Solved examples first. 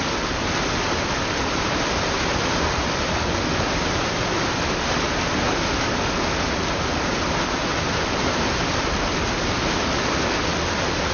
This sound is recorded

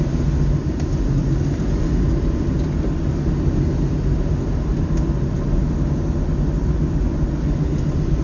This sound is recorded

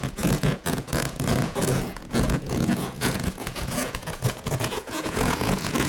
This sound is remade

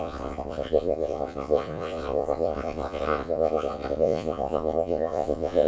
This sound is remade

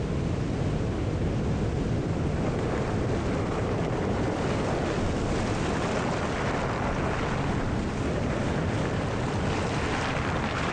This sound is recorded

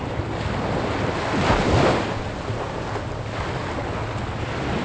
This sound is recorded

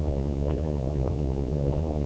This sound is remade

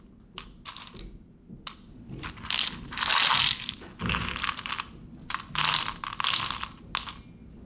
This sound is recorded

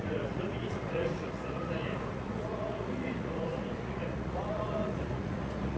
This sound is remade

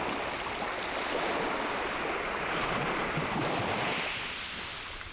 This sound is recorded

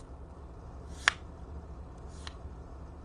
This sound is recorded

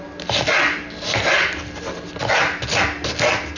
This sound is recorded